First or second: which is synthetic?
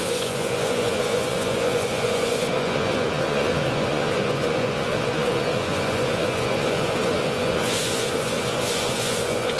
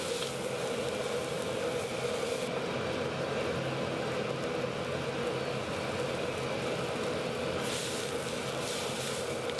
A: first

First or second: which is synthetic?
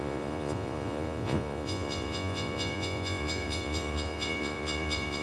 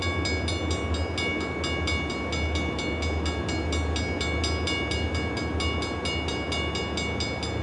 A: first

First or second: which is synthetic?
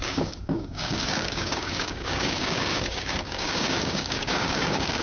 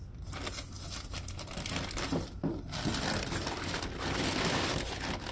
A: first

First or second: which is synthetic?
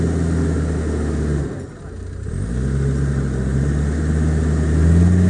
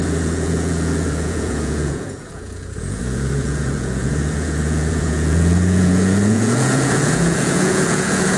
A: second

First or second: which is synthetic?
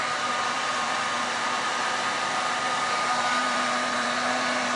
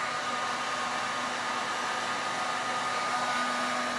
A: first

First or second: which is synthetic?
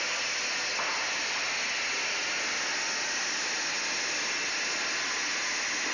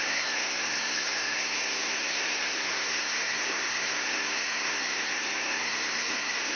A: second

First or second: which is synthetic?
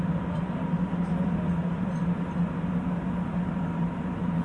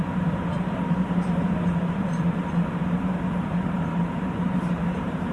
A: second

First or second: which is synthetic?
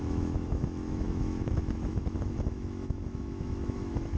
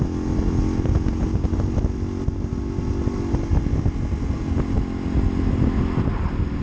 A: first